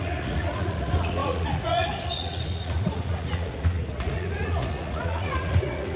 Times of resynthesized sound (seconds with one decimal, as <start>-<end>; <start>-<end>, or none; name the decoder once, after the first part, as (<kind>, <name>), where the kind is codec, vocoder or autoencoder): 0.0-6.0 (vocoder, Vocos)